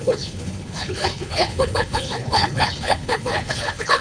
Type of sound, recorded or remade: remade